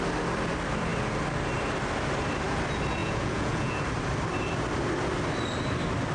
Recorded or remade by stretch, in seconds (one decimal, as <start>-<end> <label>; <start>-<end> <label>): 0.0-3.0 recorded; 3.0-3.8 remade; 3.8-6.1 recorded